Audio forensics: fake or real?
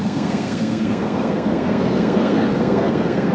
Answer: fake